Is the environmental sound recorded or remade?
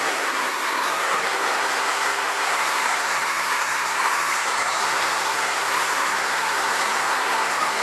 remade